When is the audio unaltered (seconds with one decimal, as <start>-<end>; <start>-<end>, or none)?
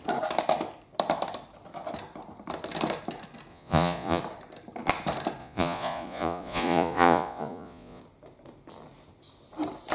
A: 0.0-3.5; 4.2-5.4; 8.0-9.9